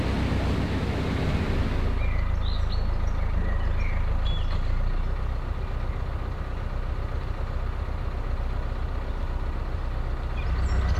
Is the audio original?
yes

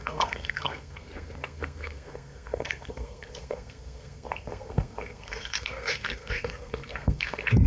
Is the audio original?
no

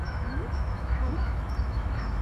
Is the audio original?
no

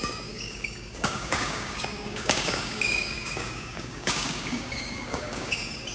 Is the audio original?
no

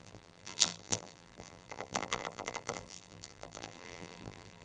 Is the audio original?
no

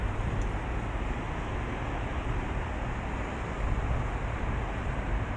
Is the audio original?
yes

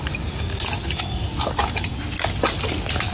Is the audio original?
yes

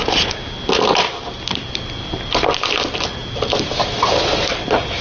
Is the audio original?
yes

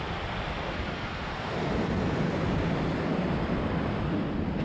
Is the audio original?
yes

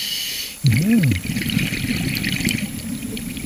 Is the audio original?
yes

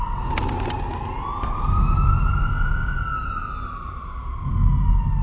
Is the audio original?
yes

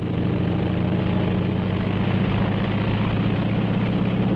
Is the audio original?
yes